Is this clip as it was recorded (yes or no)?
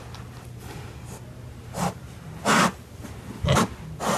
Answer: yes